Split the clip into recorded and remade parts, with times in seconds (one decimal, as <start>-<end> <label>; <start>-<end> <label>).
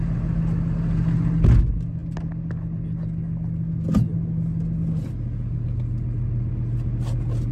0.0-7.5 recorded